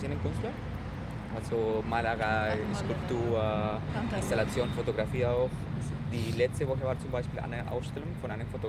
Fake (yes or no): no